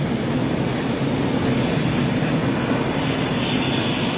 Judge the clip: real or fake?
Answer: real